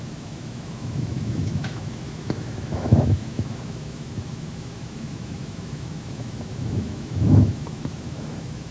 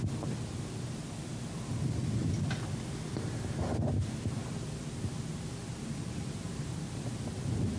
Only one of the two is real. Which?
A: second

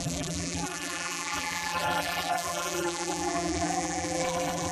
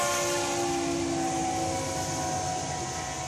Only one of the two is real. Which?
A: second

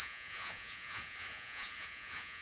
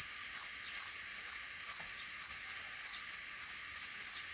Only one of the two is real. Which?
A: second